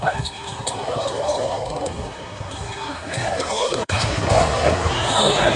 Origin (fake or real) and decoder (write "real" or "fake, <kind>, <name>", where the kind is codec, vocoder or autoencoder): fake, codec, SNAC